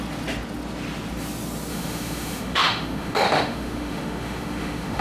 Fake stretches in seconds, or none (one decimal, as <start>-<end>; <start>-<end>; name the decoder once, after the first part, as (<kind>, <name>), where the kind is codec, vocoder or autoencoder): 1.7-5.0 (autoencoder, DAC-VAE)